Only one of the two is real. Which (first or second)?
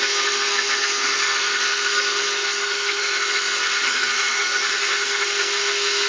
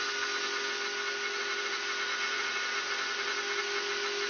second